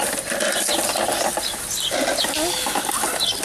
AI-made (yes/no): no